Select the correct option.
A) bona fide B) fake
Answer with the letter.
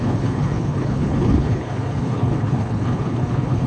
B